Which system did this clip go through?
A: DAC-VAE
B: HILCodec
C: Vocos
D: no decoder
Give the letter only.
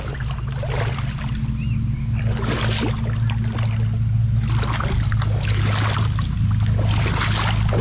D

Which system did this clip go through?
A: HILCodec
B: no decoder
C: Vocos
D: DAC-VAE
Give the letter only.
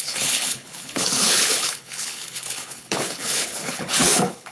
A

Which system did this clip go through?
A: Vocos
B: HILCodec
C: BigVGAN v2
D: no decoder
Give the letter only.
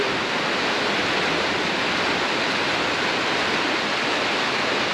D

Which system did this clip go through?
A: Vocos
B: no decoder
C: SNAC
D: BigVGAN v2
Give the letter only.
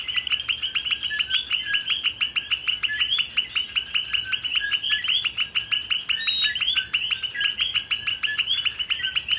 B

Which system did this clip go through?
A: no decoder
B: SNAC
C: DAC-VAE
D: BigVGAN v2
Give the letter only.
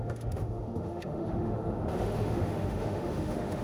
C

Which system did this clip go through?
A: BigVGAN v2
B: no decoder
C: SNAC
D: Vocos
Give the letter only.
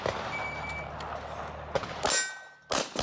B